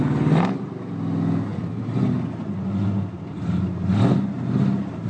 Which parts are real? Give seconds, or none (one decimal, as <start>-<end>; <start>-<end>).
0.0-5.1